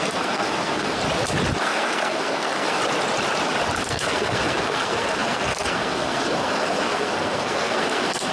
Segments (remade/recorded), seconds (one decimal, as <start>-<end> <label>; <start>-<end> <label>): 0.0-1.0 remade; 1.0-1.6 recorded; 1.6-2.8 remade; 2.8-3.9 recorded; 3.9-8.3 remade